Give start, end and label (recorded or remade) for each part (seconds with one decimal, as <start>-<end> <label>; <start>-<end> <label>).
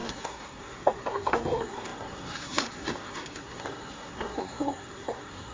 0.0-5.5 remade